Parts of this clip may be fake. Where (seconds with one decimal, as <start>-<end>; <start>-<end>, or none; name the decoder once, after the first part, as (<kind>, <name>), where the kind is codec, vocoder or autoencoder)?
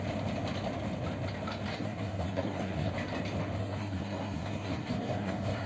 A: 1.7-2.9 (codec, SNAC); 3.6-5.7